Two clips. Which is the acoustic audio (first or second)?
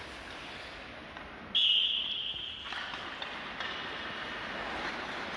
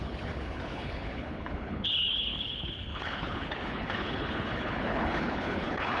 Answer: first